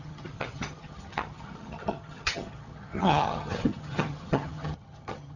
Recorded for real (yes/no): no